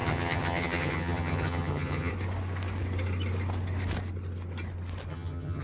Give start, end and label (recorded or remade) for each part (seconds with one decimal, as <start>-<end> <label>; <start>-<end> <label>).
0.0-2.1 remade; 2.1-5.1 recorded; 5.1-5.6 remade